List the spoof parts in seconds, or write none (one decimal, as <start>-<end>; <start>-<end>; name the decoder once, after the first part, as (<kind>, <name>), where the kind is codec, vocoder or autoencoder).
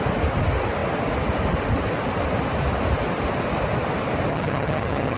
4.3-5.2 (vocoder, HiFi-GAN)